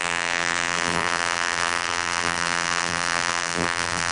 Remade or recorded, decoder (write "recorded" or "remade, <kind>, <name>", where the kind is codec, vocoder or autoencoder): remade, vocoder, BigVGAN v2